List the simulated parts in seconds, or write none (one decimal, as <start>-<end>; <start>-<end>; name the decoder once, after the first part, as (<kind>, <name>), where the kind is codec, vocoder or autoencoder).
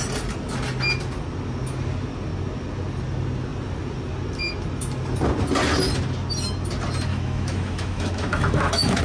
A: 7.1-9.0 (autoencoder, DAC-VAE)